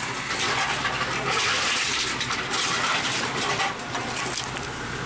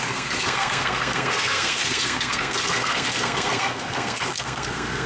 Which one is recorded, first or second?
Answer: first